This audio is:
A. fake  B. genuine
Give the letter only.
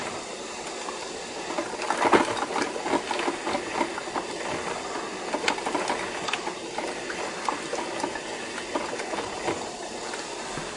B